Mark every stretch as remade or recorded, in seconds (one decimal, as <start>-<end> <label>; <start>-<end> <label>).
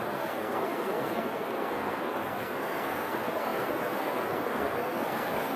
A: 0.0-5.6 remade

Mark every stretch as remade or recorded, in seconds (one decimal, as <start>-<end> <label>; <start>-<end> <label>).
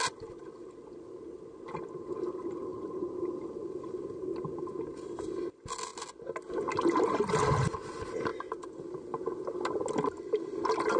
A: 0.0-11.0 recorded